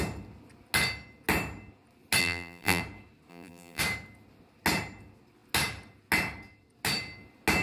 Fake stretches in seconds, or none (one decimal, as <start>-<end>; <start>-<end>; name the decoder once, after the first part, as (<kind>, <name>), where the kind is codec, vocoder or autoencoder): 2.2-2.8 (vocoder, BigVGAN v2); 3.3-3.8